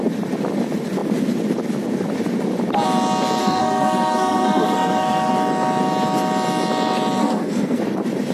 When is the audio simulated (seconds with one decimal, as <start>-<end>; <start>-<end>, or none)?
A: 3.4-5.3; 7.2-7.8